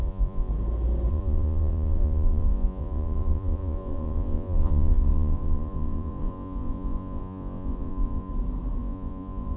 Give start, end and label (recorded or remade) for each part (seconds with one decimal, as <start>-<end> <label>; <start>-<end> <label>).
0.0-0.5 remade; 0.5-1.1 recorded; 1.1-8.3 remade; 8.3-8.8 recorded; 8.8-9.6 remade